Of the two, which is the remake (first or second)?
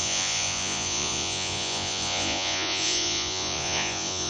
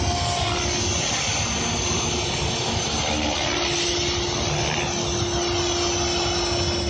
first